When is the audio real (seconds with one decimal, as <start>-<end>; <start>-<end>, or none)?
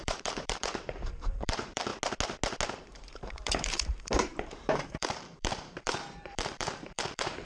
1.9-2.8